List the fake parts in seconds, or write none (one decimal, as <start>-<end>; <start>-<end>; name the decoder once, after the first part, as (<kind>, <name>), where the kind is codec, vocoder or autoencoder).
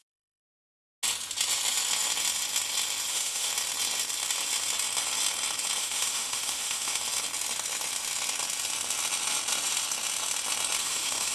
0.0-0.4 (autoencoder, DAC-VAE); 3.1-3.5; 5.8-7.0; 10.8-11.3